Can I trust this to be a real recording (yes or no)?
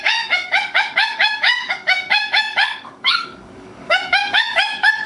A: no